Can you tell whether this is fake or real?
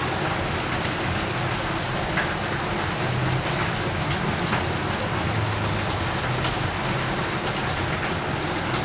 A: real